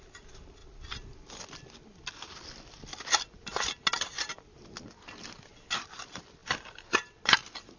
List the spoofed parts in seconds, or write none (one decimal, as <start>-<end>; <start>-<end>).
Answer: none